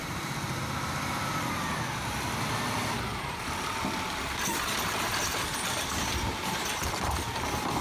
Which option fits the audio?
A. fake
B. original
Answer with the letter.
A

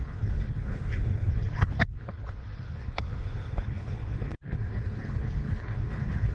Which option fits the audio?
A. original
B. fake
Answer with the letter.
B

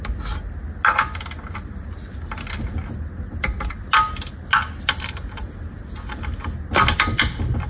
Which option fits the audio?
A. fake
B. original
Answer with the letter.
B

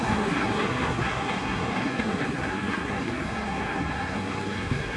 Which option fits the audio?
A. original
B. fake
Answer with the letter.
B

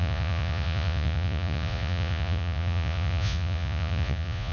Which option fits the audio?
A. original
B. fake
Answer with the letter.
B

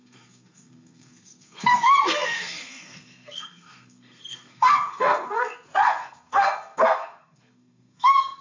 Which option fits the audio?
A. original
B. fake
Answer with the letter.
B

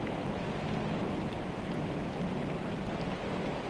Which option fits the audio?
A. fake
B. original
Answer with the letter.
B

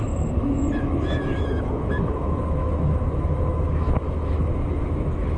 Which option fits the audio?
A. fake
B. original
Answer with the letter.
A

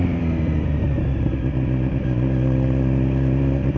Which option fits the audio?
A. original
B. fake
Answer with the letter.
A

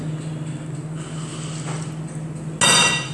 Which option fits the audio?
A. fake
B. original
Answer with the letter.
B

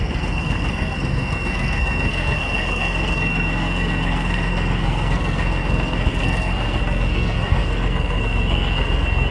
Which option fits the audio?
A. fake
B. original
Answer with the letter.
A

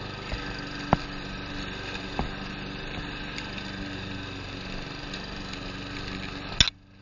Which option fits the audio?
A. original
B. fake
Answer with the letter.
A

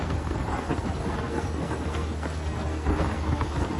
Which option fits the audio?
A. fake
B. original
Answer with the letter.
A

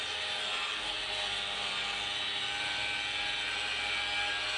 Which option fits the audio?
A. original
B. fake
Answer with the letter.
A